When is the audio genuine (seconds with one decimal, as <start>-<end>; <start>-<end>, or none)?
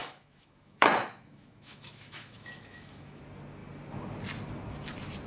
3.2-5.3